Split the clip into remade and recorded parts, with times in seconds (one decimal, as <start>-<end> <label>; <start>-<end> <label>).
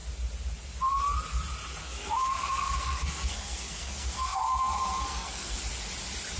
0.0-1.8 recorded; 1.8-5.6 remade; 5.6-6.4 recorded